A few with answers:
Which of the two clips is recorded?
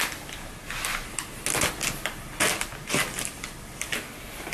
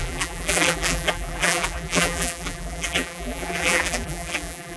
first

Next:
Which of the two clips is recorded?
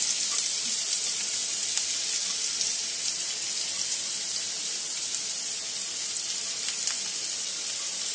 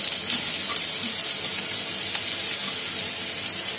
second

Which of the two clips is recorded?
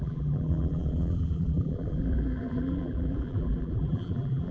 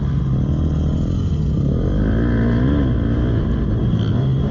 second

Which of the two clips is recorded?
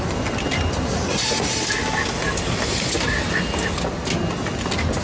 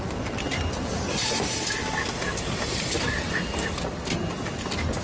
first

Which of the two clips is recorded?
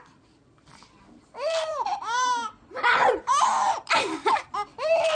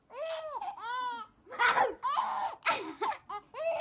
second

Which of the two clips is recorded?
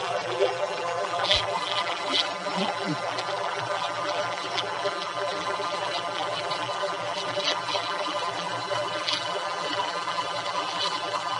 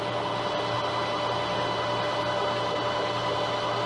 second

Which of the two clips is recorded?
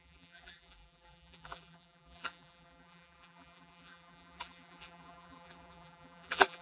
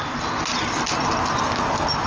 second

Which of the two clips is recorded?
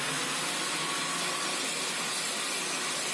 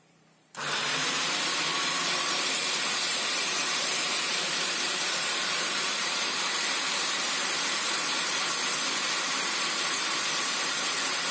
first